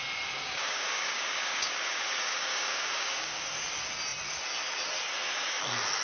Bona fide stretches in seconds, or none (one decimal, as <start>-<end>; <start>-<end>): 0.0-0.4; 3.5-6.0